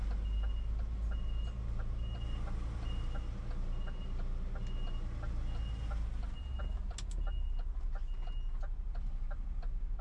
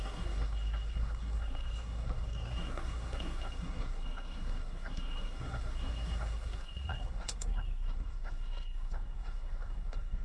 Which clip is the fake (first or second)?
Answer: second